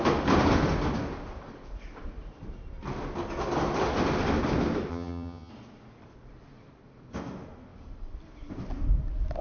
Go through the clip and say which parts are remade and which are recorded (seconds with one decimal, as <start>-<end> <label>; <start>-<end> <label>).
0.0-4.9 recorded; 4.9-5.5 remade; 5.5-9.4 recorded